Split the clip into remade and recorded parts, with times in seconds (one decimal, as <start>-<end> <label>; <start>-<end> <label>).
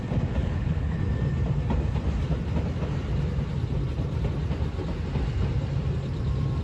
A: 0.0-0.4 recorded; 0.4-1.0 remade; 1.0-6.6 recorded